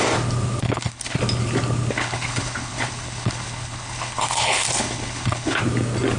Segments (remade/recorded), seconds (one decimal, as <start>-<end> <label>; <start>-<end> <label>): 0.0-0.6 recorded; 0.6-1.2 remade; 1.2-1.9 recorded; 1.9-5.6 remade; 5.6-6.2 recorded